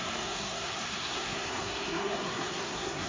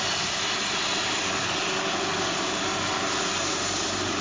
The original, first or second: second